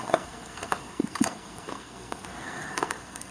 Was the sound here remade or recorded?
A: remade